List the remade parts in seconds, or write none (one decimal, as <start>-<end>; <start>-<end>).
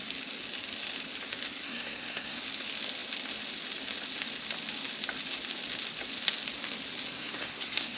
1.6-2.4; 7.2-8.0